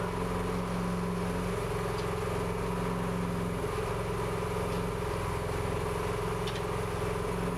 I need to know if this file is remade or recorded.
recorded